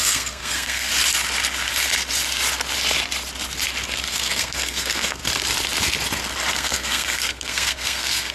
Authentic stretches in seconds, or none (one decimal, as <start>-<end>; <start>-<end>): 0.9-4.1; 5.2-6.5